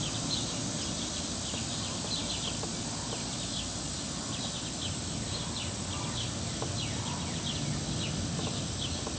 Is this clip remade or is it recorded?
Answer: recorded